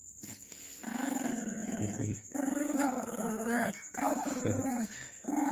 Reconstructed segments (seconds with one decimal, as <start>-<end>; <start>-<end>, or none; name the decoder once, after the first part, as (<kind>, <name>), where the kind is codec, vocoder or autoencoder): 0.0-4.2 (codec, SNAC); 4.7-5.5